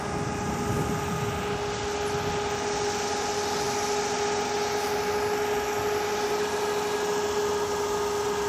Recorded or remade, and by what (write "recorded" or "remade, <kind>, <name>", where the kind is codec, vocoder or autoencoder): recorded